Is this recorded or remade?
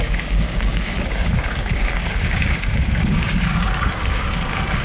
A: remade